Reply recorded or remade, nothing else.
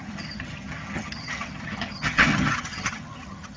remade